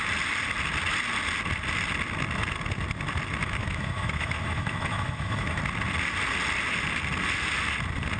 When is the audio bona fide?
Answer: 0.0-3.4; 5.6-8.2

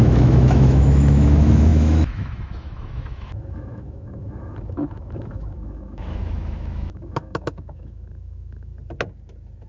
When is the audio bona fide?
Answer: 8.7-9.7